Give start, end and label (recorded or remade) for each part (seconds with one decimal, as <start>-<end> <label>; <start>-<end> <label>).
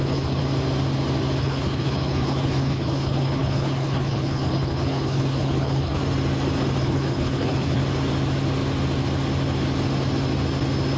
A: 0.0-0.4 remade; 0.4-1.4 recorded; 1.4-6.0 remade; 6.0-6.8 recorded; 6.8-7.8 remade; 7.8-11.0 recorded